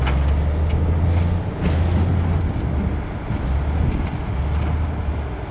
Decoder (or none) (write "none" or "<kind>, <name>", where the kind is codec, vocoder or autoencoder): none